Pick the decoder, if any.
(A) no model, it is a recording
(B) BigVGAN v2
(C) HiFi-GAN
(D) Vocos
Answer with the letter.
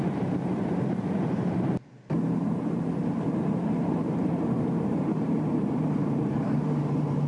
B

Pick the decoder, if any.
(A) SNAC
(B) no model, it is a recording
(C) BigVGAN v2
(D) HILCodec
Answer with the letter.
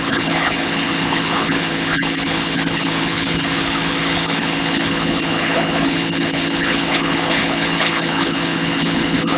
D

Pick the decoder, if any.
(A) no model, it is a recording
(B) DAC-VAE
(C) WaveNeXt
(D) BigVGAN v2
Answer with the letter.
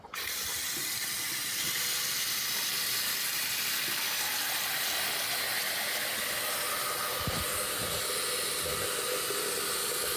A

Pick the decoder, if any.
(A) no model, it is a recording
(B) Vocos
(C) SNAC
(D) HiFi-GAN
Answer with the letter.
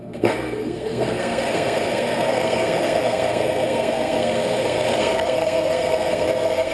C